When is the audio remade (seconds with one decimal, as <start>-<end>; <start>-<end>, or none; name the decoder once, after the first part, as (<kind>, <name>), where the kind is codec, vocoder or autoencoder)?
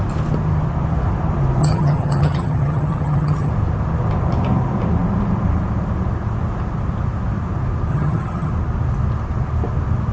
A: 1.6-3.5 (vocoder, HiFi-GAN); 7.9-8.5